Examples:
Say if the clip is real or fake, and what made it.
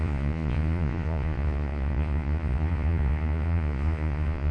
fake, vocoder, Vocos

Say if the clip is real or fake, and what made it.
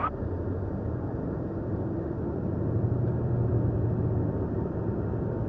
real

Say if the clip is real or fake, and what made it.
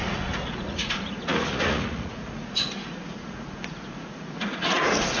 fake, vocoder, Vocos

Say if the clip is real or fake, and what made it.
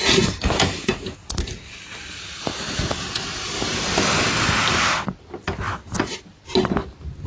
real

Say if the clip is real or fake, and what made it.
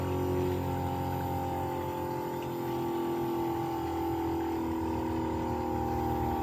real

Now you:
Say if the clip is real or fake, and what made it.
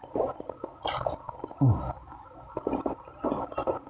real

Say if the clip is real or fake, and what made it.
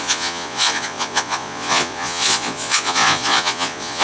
fake, vocoder, Vocos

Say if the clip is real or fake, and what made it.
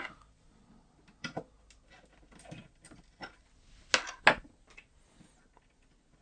real